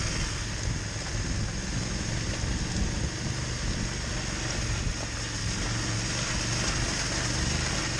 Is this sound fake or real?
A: real